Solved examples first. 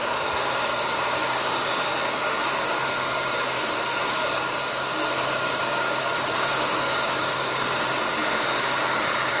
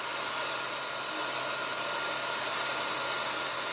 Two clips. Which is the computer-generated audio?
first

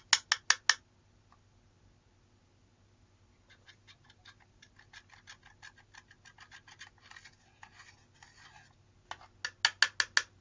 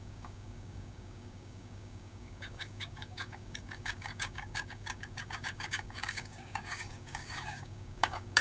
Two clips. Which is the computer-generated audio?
second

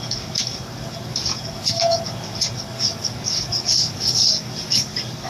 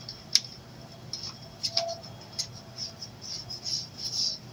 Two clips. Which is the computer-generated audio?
first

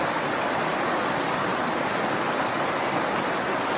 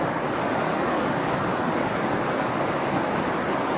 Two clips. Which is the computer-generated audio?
second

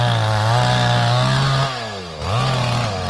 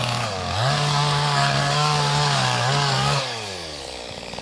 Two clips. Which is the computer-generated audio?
second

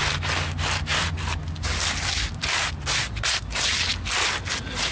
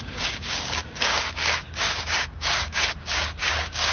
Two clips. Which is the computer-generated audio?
second